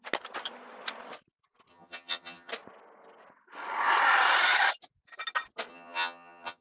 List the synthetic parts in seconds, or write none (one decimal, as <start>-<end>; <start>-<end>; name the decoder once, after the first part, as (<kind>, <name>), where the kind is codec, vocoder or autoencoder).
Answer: 1.7-2.5 (vocoder, HiFi-GAN); 5.7-6.6